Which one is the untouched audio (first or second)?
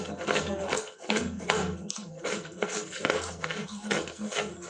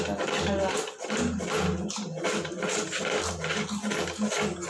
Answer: second